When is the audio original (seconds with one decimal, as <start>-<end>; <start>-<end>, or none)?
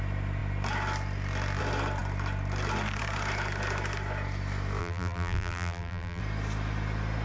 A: 0.0-4.8; 6.2-7.2